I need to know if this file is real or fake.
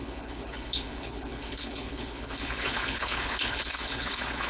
fake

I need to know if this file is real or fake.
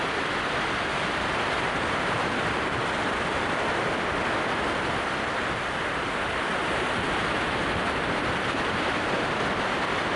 real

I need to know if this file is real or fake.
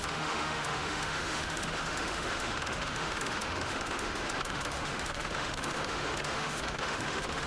fake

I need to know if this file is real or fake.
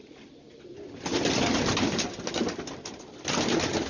real